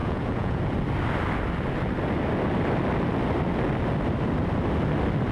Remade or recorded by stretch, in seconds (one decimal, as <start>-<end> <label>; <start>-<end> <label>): 0.0-0.6 remade; 0.6-5.3 recorded